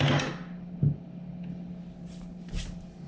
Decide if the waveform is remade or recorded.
recorded